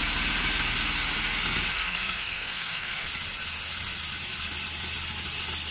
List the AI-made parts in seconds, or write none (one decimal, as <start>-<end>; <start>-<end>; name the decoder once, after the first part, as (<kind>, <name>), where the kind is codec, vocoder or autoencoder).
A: 1.7-3.1 (codec, SNAC)